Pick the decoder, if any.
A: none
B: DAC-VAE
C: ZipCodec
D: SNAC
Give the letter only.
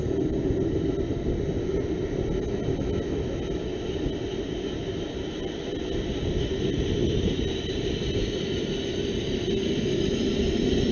A